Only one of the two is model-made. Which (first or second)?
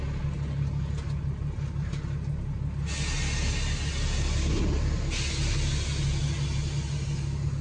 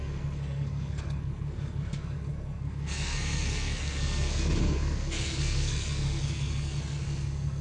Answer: second